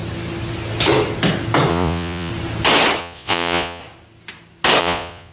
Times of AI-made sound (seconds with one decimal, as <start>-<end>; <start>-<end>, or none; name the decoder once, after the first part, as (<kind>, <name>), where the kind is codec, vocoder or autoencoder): 1.7-2.3 (vocoder, Vocos); 3.0-3.8; 4.8-5.3